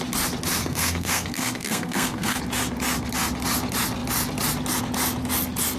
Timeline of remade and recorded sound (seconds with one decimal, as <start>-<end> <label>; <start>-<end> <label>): 0.0-0.6 recorded; 0.6-2.4 remade; 2.4-5.8 recorded

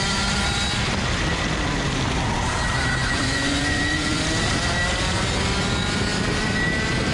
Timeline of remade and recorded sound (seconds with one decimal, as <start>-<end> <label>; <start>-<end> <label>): 0.0-3.0 recorded; 3.0-4.2 remade; 4.2-7.1 recorded

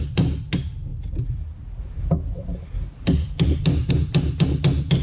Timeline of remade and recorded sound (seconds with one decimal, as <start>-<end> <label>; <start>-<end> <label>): 0.0-5.0 recorded

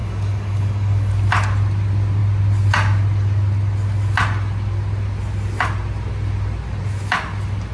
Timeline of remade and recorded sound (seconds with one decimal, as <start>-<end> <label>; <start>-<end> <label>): 0.0-1.1 remade; 1.1-7.7 recorded

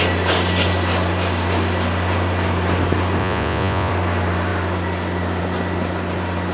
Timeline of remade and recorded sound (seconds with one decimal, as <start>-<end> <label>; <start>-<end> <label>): 0.0-3.2 recorded; 3.2-3.9 remade; 3.9-6.5 recorded

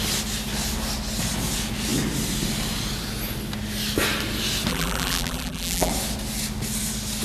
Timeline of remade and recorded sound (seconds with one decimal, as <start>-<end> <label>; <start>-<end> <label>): 0.0-4.7 recorded; 4.7-5.9 remade; 5.9-7.2 recorded